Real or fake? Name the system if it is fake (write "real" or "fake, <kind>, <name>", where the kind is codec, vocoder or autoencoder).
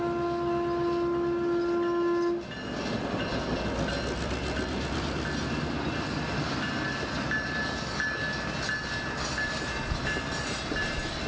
real